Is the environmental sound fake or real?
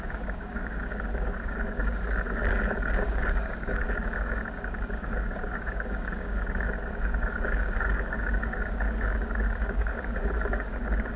fake